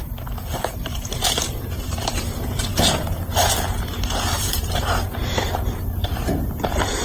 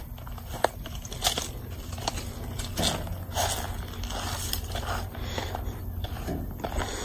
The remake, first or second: first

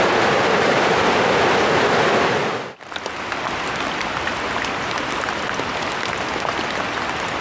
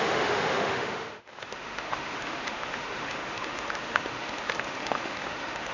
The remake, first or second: second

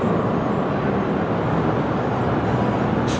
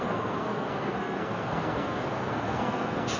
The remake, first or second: second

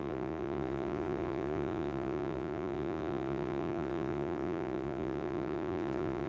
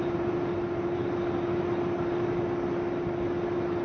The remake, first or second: first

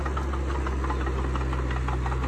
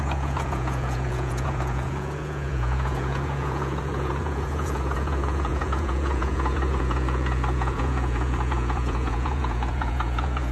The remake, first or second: second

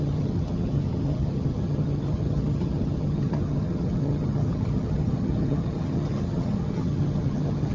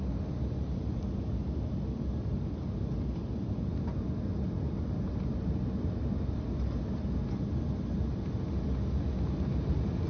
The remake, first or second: first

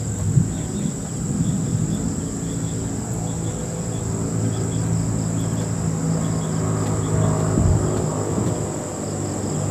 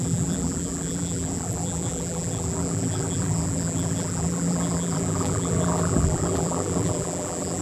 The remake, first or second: second